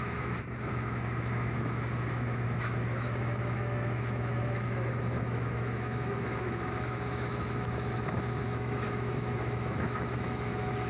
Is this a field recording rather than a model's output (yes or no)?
no